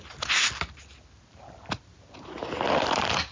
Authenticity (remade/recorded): recorded